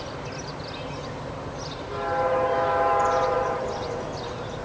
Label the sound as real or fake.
real